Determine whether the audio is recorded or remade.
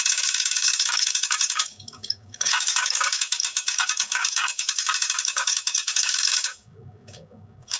remade